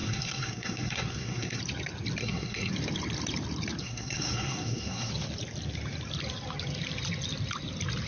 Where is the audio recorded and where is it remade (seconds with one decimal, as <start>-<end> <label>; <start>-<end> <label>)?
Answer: 0.0-1.6 remade; 1.6-2.2 recorded; 2.2-2.7 remade; 2.7-3.8 recorded; 3.8-5.1 remade; 5.1-8.1 recorded